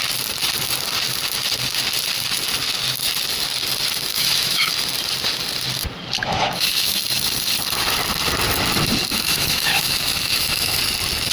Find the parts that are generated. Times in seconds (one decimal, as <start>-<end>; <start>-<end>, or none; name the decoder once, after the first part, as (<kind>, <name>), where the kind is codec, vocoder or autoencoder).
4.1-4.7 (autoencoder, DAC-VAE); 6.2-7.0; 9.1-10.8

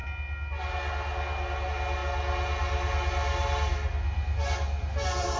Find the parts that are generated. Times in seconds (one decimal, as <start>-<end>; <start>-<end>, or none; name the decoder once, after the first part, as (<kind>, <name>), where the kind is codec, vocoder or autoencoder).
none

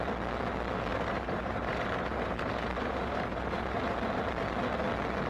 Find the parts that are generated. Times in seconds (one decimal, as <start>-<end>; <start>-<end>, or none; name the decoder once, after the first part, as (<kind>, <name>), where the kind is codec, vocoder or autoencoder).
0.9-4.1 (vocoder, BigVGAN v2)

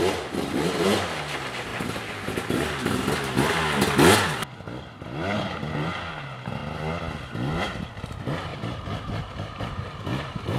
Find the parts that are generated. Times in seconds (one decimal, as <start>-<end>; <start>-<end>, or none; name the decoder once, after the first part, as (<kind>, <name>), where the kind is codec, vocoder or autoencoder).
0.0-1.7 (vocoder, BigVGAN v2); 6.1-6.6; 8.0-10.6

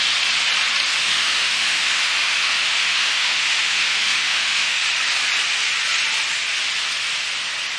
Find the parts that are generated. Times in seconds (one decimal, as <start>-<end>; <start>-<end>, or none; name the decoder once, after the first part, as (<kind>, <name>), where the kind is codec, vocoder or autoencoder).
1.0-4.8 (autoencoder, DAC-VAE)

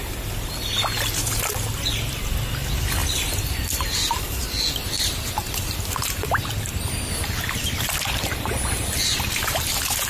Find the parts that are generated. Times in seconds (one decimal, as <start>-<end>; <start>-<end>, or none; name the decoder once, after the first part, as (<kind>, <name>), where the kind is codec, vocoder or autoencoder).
3.0-4.2 (vocoder, BigVGAN v2)

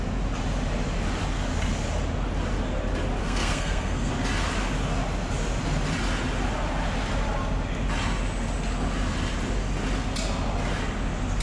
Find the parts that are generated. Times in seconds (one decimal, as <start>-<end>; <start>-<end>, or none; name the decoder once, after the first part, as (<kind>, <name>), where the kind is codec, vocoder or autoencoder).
3.2-4.1 (codec, SNAC)